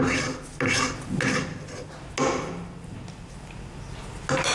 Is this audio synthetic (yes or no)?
no